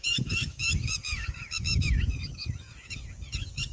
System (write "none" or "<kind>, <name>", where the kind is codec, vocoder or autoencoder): autoencoder, DAC-VAE